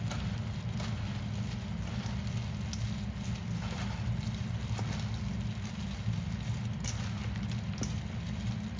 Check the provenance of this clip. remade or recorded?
recorded